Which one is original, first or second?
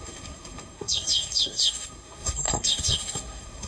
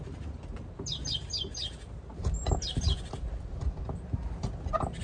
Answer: second